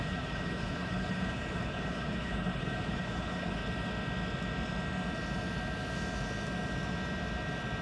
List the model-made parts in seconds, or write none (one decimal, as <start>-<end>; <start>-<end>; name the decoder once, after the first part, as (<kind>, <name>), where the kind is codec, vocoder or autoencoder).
0.0-3.6 (codec, HILCodec)